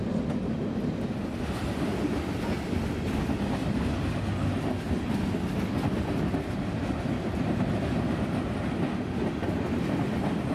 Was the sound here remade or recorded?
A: recorded